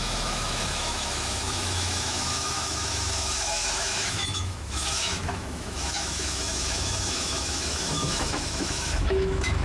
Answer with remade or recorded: remade